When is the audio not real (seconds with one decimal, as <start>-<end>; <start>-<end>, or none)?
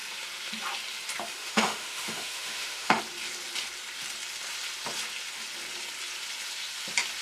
1.4-3.0